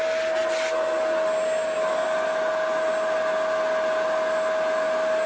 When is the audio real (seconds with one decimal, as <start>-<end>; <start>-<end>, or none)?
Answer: 0.0-5.3